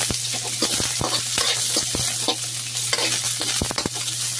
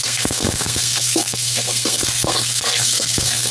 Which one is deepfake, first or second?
second